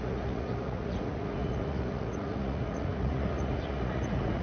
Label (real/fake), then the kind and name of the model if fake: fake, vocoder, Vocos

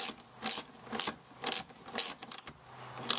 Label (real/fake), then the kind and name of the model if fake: real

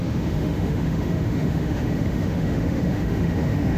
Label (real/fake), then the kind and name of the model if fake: fake, autoencoder, DAC-VAE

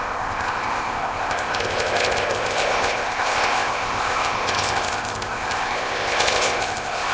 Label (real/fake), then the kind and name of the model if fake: fake, codec, ZipCodec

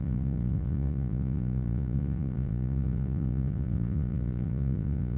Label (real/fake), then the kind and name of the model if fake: fake, vocoder, Vocos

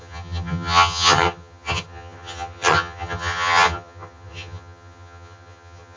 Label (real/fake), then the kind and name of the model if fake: fake, vocoder, HiFi-GAN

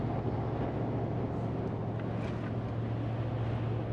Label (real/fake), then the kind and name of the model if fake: real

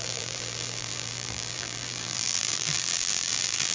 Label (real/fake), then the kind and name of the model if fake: fake, vocoder, BigVGAN v2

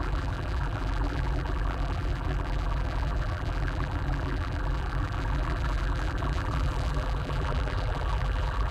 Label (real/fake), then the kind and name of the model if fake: fake, vocoder, BigVGAN v2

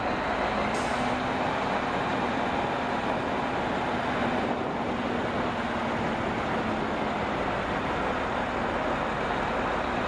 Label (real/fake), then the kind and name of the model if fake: real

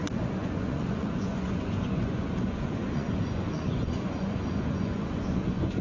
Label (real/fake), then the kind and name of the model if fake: fake, vocoder, Vocos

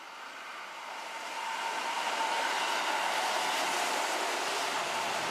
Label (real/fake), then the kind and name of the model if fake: real